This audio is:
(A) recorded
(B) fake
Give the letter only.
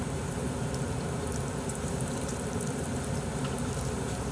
B